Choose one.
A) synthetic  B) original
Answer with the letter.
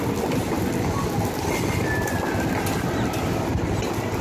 B